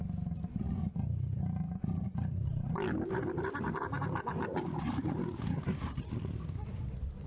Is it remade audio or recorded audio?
recorded